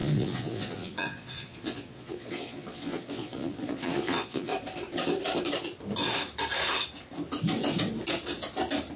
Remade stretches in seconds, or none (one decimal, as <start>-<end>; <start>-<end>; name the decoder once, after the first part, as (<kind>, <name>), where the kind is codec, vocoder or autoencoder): 0.0-4.5 (vocoder, Vocos)